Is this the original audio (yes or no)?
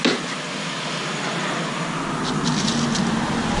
yes